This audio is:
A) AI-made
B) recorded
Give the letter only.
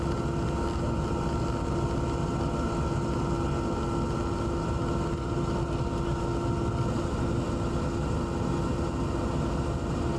B